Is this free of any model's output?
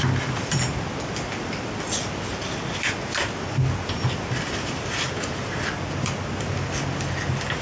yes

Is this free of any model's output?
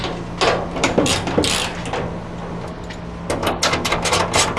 yes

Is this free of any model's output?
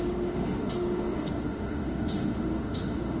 no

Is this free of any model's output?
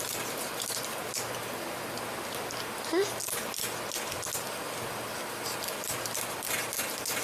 yes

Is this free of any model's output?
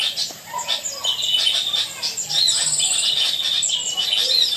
yes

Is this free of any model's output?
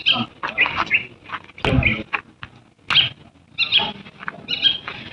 yes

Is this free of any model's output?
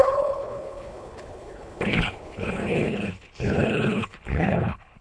no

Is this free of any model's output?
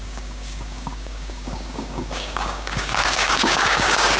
no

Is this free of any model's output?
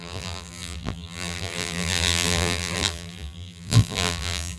no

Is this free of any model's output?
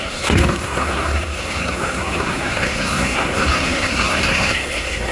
no